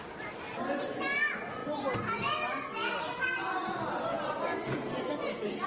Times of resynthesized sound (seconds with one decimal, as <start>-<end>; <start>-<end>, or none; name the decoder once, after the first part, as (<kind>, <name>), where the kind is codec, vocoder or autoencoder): none